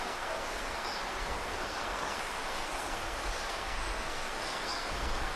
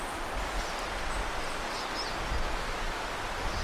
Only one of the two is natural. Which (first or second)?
second